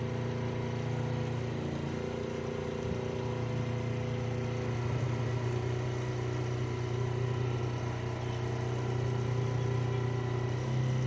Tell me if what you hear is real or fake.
real